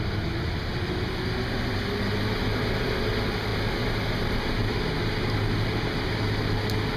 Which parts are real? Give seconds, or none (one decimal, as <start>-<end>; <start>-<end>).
0.0-7.0